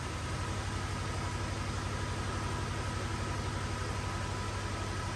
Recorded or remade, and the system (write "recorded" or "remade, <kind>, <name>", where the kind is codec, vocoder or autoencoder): recorded